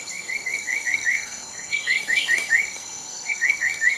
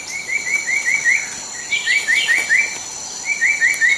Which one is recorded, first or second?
second